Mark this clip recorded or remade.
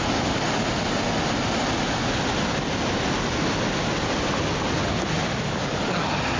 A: recorded